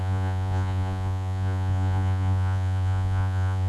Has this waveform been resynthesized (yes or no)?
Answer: yes